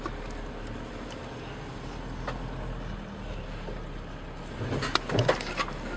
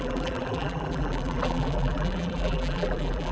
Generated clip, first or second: second